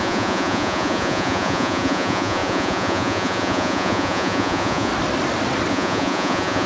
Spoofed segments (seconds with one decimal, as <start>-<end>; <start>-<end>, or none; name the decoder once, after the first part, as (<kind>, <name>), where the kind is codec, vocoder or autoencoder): 0.0-4.9 (vocoder, Vocos); 5.7-6.7